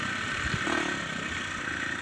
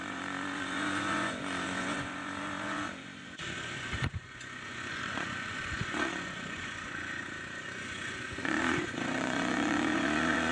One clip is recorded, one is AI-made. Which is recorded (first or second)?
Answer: first